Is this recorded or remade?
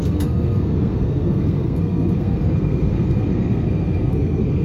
remade